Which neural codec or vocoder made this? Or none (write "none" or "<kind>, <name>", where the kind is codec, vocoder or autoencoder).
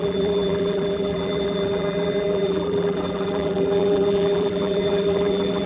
vocoder, BigVGAN v2